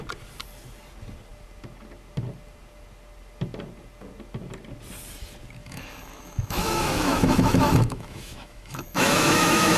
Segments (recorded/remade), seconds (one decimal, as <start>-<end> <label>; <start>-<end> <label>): 0.0-5.6 recorded; 5.6-9.8 remade